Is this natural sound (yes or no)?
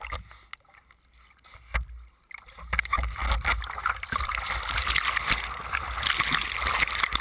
yes